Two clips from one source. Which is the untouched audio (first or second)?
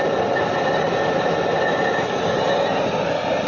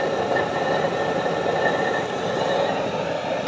first